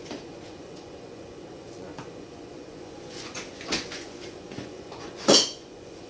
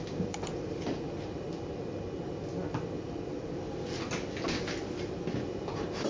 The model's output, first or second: first